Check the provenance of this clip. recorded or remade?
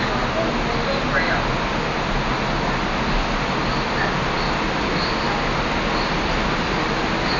recorded